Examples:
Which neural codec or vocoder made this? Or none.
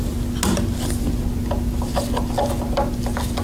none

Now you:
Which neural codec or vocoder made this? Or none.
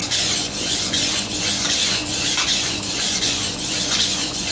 vocoder, Vocos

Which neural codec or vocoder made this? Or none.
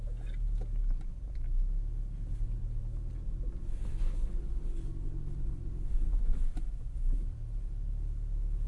none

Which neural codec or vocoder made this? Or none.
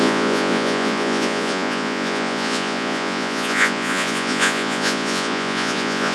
vocoder, Vocos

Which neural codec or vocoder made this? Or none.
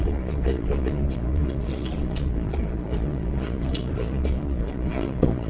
vocoder, Vocos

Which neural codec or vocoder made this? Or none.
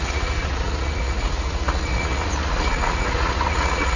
vocoder, Vocos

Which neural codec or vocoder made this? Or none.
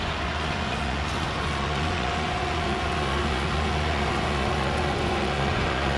vocoder, Vocos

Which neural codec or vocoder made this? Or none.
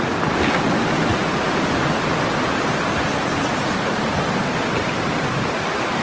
none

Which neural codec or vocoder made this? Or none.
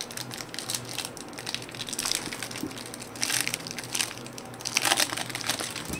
none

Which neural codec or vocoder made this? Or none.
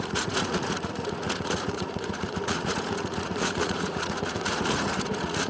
vocoder, Vocos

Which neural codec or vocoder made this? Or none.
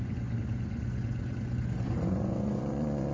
vocoder, Vocos